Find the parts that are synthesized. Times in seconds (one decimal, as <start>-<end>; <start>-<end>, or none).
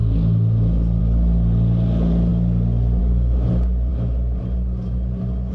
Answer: none